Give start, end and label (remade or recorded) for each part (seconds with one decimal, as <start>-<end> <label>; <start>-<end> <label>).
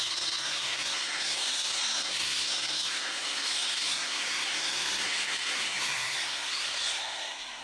0.0-7.6 remade